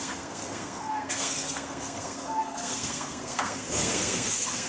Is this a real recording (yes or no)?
no